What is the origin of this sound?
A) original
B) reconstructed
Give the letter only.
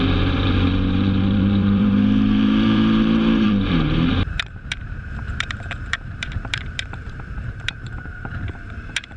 B